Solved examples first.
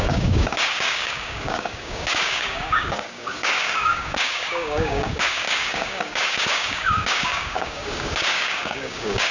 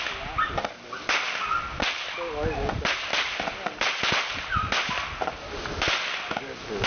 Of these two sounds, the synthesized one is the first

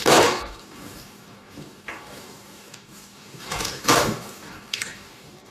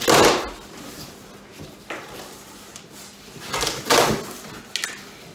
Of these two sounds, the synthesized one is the first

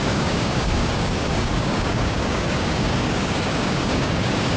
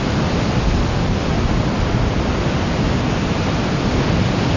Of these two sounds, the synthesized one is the first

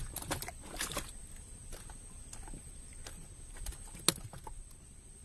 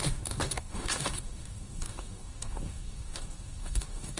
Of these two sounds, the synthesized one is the second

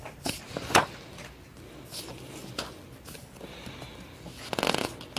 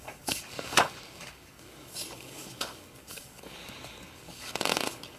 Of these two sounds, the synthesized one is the second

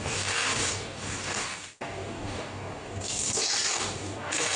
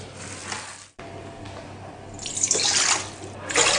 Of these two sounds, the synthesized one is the first